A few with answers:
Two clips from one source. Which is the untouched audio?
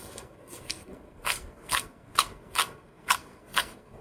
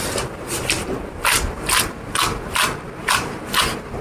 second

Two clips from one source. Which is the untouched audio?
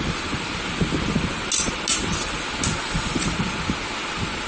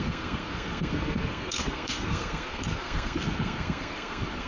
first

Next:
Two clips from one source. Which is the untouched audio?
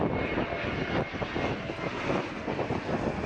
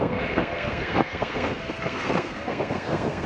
first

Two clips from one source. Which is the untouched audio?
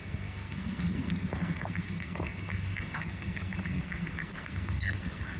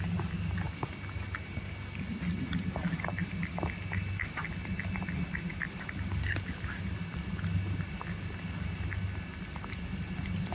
second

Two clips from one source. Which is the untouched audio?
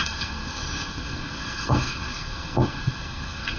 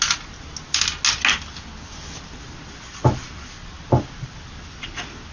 second